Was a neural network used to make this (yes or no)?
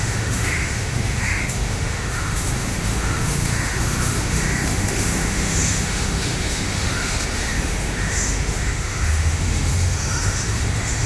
yes